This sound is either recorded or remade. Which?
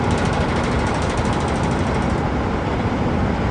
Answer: recorded